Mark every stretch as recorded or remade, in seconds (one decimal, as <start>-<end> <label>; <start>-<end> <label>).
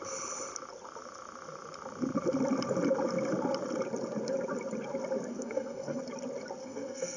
0.0-5.3 recorded; 5.3-6.0 remade; 6.0-6.6 recorded; 6.6-7.2 remade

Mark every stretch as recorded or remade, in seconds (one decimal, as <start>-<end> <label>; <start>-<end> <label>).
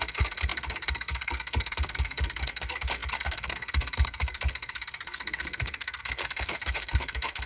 0.0-7.5 remade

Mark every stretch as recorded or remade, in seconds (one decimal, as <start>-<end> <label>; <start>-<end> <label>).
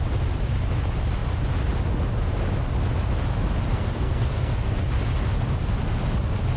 0.0-3.7 recorded; 3.7-4.9 remade; 4.9-6.6 recorded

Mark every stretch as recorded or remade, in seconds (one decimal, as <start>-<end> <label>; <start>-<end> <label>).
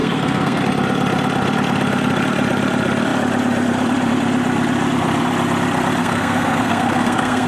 0.0-0.6 remade; 0.6-6.0 recorded; 6.0-7.5 remade